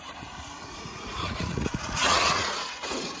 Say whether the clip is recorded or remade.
remade